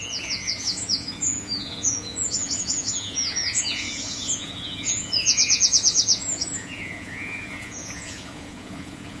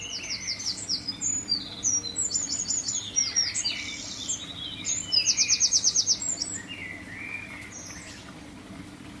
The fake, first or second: first